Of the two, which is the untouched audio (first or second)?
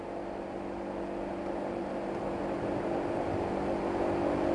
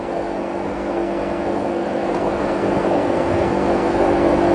first